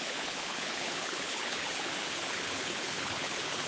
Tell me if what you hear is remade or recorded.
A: remade